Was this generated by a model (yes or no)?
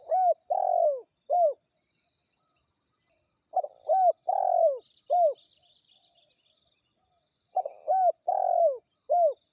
no